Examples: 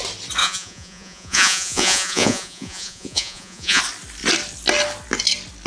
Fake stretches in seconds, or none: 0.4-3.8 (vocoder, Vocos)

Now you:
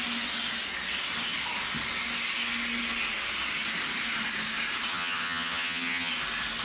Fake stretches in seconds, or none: 4.9-6.1 (vocoder, HiFi-GAN)

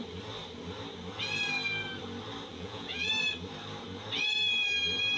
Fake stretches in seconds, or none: 2.5-3.1 (vocoder, Vocos)

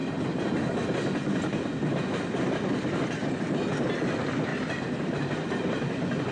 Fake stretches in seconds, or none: 4.5-6.3 (vocoder, BigVGAN v2)